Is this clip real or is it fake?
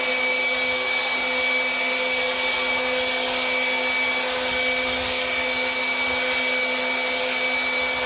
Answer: real